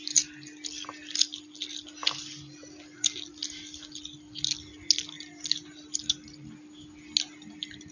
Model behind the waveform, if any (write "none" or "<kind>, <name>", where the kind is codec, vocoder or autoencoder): none